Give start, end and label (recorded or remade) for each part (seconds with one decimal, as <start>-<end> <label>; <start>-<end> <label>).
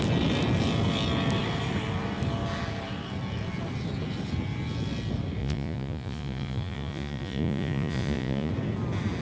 0.0-5.4 recorded; 5.4-8.5 remade; 8.5-9.2 recorded